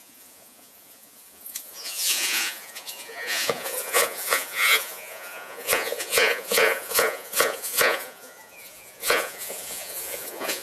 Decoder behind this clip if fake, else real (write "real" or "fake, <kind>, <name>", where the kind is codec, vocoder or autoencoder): fake, vocoder, Vocos